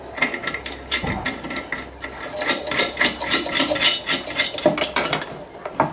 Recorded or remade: recorded